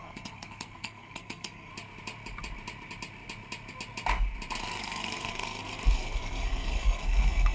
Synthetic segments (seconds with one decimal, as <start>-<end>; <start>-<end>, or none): 0.0-1.7; 4.6-7.5